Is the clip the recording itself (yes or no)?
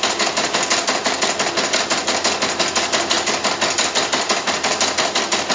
yes